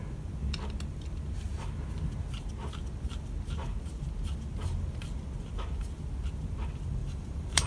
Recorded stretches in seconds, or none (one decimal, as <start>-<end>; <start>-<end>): 0.0-7.0

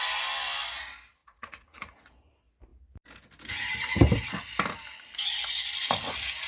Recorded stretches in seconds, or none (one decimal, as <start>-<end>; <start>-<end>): 0.0-1.2; 2.1-6.5

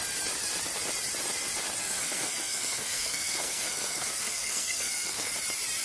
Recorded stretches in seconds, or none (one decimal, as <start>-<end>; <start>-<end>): 0.0-1.8; 5.3-5.8